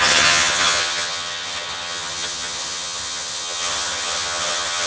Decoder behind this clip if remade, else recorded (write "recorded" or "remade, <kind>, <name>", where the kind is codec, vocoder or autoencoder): remade, vocoder, HiFi-GAN